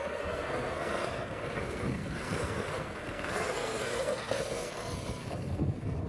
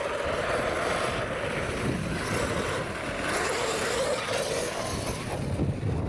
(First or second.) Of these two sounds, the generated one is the first